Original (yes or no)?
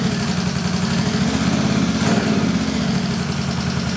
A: yes